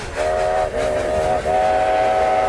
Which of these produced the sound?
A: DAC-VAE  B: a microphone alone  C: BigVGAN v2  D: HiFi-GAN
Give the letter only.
B